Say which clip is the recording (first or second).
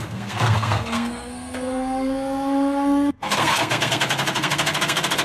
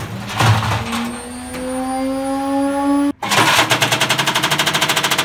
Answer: second